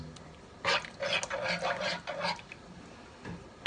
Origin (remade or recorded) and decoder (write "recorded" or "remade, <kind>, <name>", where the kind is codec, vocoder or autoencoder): recorded